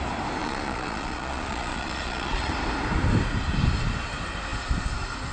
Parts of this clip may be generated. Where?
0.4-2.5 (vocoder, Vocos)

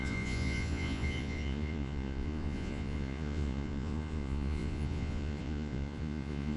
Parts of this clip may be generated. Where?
0.0-6.6 (vocoder, Vocos)

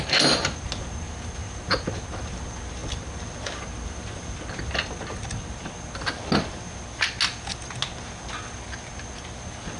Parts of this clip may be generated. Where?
none

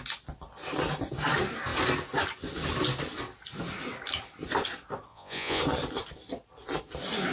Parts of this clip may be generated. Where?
5.1-5.6 (vocoder, Vocos)

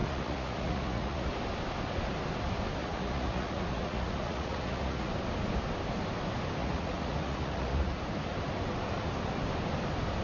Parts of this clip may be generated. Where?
0.0-1.3 (vocoder, Vocos); 2.8-5.1; 6.6-8.0